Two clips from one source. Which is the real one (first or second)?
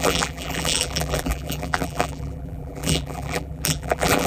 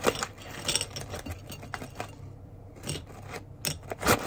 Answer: second